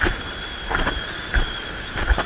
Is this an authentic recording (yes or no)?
yes